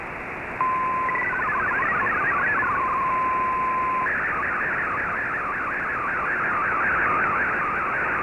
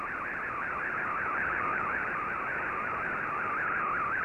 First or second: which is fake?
second